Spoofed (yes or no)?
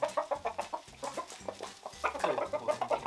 no